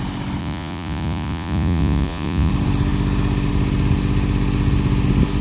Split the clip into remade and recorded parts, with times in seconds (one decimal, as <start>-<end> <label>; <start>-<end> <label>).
0.0-0.4 recorded; 0.4-2.5 remade; 2.5-5.4 recorded